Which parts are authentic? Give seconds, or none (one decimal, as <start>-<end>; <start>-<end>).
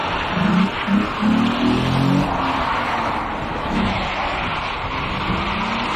0.0-3.5; 4.0-6.0